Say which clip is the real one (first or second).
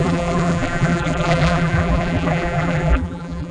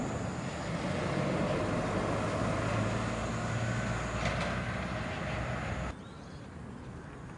second